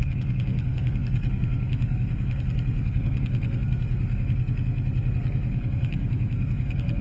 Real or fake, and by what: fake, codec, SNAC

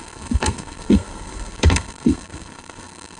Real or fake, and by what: fake, codec, SNAC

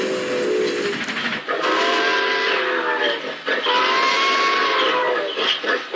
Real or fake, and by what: real